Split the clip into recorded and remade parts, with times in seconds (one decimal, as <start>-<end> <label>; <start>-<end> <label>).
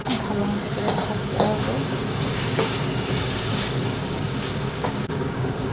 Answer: 0.0-5.7 remade